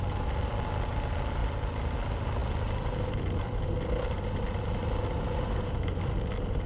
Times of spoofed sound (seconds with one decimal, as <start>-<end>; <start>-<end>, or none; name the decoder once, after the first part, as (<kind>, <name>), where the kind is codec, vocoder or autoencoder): none